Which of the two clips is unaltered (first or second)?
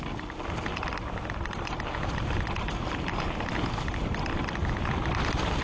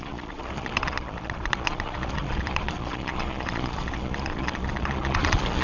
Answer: first